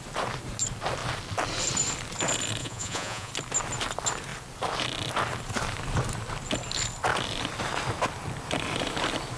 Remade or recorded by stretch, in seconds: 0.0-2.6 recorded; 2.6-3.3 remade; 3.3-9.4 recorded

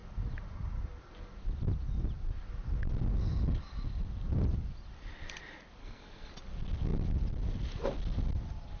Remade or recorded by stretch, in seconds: 0.0-5.8 recorded; 5.8-6.3 remade; 6.3-8.8 recorded